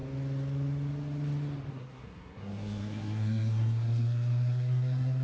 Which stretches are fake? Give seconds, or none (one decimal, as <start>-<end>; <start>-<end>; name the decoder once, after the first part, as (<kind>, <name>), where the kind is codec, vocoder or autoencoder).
1.7-5.2 (codec, SNAC)